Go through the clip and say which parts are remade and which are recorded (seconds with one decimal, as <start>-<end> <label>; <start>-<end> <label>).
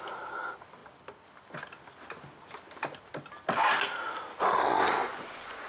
0.0-5.0 recorded; 5.0-5.7 remade